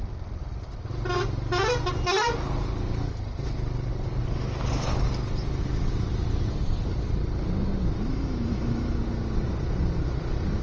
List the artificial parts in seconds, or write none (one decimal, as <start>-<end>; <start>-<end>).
8.1-9.0